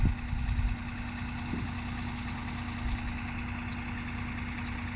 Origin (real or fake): real